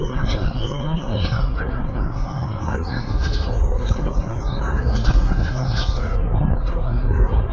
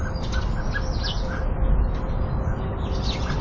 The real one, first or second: second